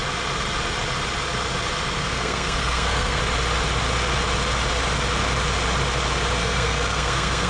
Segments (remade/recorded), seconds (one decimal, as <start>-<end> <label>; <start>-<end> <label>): 0.0-2.0 recorded; 2.0-3.2 remade; 3.2-6.4 recorded; 6.4-7.5 remade